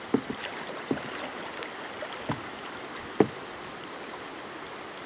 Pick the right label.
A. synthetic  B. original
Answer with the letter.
B